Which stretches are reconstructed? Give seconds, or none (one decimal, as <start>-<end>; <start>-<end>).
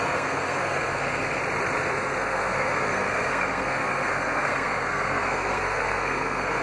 0.0-1.4; 1.9-6.6